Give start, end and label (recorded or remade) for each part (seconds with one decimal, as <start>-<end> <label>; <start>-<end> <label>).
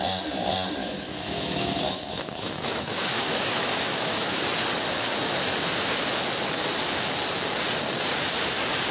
0.0-0.8 recorded; 0.8-4.4 remade; 4.4-8.9 recorded